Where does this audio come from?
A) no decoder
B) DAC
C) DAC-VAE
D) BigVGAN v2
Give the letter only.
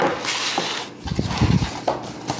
A